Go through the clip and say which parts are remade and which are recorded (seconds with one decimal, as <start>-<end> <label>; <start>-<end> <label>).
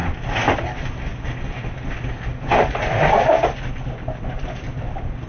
0.0-0.6 remade; 0.6-5.3 recorded